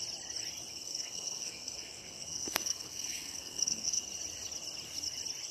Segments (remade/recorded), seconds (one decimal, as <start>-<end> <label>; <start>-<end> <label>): 0.0-0.7 recorded; 0.7-4.0 remade; 4.0-5.5 recorded